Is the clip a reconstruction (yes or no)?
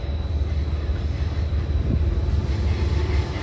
no